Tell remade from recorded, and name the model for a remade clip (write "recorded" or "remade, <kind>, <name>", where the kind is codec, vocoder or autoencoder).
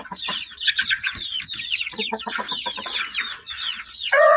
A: remade, vocoder, Vocos